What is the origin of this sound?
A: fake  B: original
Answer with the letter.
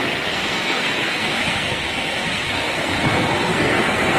A